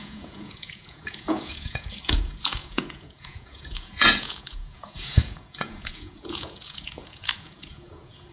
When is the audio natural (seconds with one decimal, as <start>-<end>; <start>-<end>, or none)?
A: none